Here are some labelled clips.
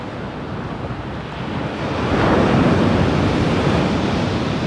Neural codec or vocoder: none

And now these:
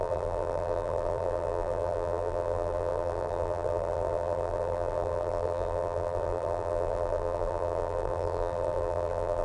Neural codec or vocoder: vocoder, BigVGAN v2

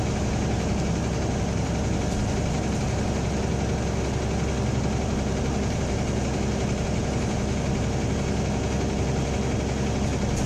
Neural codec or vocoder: none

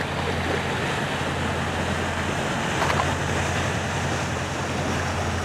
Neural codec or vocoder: none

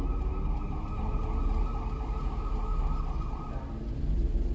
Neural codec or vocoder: none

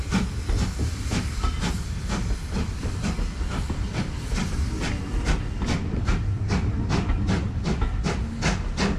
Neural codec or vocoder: none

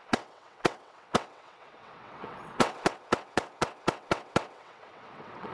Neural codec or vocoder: vocoder, WaveNeXt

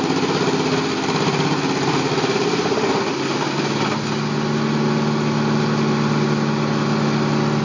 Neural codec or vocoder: none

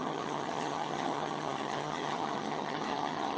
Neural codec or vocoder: vocoder, HiFi-GAN